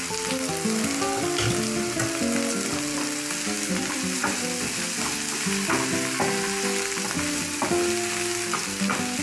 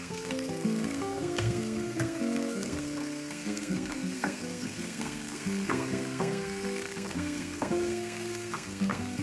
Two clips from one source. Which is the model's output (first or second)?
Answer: second